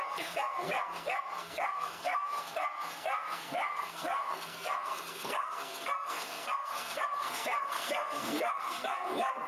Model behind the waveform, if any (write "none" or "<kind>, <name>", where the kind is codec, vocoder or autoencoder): codec, SNAC